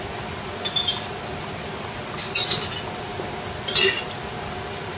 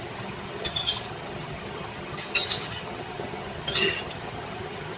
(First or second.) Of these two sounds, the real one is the first